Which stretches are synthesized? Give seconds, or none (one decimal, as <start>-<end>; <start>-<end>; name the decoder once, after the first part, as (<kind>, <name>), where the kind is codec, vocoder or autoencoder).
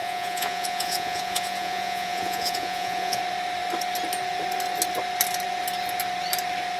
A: 0.0-3.2 (vocoder, Vocos)